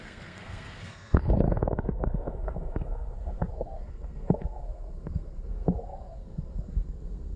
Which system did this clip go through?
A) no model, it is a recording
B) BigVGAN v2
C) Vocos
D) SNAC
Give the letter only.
D